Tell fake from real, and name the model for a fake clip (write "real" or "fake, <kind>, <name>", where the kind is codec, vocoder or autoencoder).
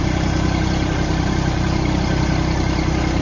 fake, vocoder, BigVGAN v2